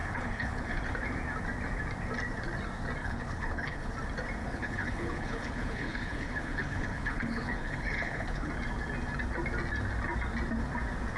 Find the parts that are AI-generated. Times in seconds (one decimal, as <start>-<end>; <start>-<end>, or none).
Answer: 0.0-0.8; 3.0-3.9; 4.4-8.5